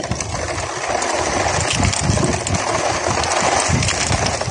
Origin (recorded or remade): recorded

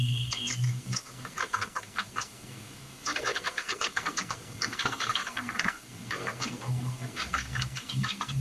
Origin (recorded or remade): remade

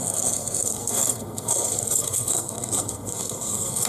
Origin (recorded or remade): remade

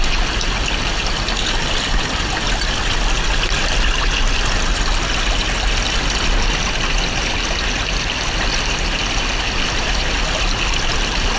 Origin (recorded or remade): recorded